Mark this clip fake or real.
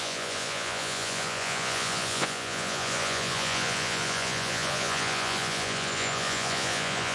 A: fake